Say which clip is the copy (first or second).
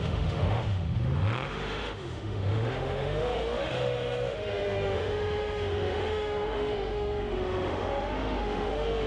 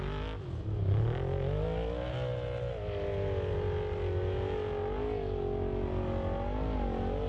first